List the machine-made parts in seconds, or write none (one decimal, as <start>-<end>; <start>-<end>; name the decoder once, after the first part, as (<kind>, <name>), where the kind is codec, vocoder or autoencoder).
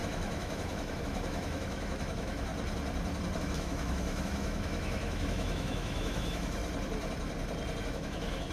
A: 0.0-2.5 (autoencoder, DAC-VAE); 3.4-6.6; 7.8-8.5